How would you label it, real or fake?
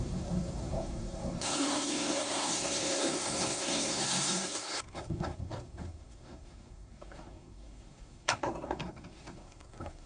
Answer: fake